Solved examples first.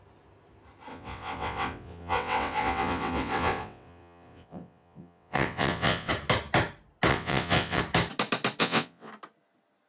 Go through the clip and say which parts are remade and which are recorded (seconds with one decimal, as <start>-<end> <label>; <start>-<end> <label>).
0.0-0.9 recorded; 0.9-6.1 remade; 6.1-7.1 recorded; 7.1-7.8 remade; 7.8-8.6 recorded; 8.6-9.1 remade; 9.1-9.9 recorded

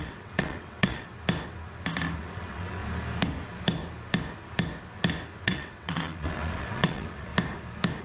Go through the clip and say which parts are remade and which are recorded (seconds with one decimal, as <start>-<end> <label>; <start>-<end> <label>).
0.0-1.1 remade; 1.1-2.2 recorded; 2.2-2.8 remade; 2.8-5.4 recorded; 5.4-7.3 remade; 7.3-8.0 recorded

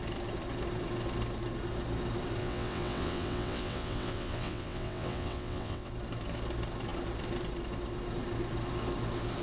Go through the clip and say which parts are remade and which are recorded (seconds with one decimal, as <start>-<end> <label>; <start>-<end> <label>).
0.0-2.4 recorded; 2.4-5.9 remade; 5.9-9.4 recorded

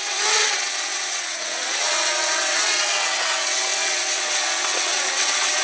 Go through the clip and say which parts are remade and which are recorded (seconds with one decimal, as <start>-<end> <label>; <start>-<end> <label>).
0.0-5.6 remade